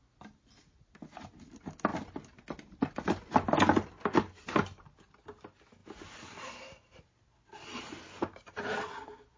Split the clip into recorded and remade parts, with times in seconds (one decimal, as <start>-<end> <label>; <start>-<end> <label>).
0.0-5.8 recorded; 5.8-7.9 remade; 7.9-9.4 recorded